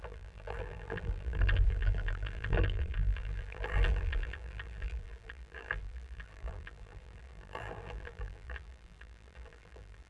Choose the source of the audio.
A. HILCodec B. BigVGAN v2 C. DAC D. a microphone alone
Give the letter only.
B